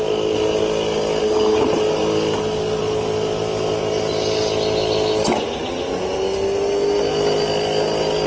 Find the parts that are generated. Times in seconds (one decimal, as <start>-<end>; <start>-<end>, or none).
none